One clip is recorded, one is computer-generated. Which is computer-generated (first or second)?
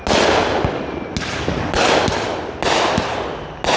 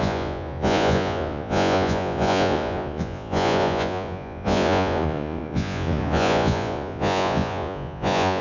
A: second